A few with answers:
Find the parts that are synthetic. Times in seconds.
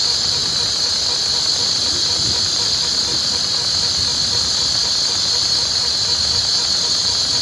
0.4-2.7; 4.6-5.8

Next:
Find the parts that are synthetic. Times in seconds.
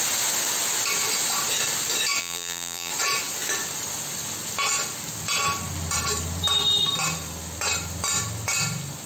2.2-2.9